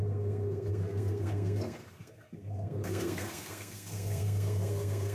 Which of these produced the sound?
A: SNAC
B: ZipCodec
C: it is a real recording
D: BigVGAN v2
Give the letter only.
A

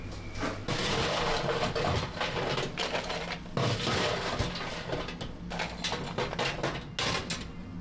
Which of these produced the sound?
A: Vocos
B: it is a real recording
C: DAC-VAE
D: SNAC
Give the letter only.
B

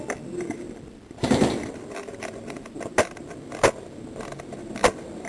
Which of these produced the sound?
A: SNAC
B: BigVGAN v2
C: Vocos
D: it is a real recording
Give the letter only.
D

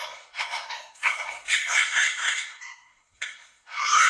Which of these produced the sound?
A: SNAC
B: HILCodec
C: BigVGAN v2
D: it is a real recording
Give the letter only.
A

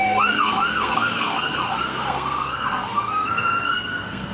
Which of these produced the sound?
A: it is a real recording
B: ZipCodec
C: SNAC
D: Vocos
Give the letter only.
C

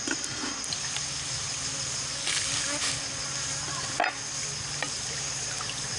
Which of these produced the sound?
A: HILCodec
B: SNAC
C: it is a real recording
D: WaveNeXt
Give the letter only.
C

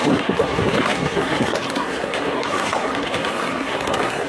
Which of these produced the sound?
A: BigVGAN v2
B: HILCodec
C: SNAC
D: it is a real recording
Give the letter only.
C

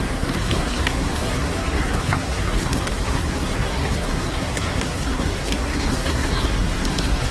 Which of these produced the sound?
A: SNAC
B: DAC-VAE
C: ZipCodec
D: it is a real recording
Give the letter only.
A